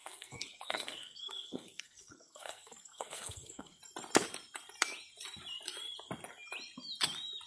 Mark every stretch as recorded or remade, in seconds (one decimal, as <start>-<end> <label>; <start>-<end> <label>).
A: 0.0-3.8 remade; 3.8-7.5 recorded